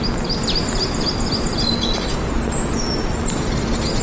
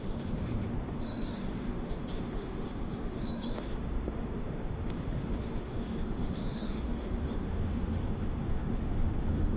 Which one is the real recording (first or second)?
first